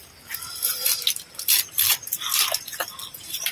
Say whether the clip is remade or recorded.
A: recorded